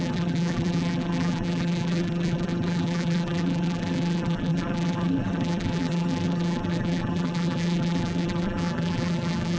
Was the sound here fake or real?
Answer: fake